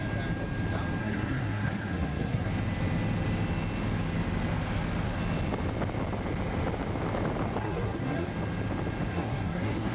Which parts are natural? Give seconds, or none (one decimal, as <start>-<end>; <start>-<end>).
0.0-1.0; 2.5-7.6; 8.3-9.1